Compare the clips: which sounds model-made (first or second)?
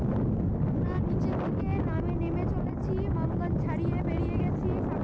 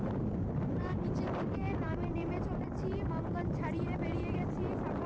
second